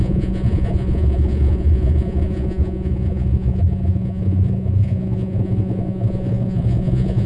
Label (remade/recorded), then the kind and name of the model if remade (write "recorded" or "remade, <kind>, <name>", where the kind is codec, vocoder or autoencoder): remade, vocoder, Vocos